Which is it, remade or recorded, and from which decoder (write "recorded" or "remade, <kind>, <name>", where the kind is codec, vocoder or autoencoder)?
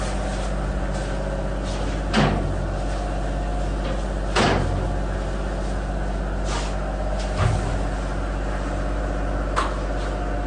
recorded